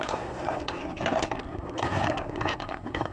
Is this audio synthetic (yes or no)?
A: yes